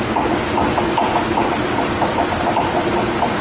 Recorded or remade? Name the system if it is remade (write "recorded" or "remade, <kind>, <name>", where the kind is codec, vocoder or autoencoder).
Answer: recorded